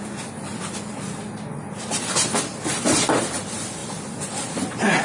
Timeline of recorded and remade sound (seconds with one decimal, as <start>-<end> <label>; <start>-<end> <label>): 0.0-5.0 recorded